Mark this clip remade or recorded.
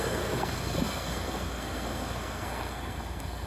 remade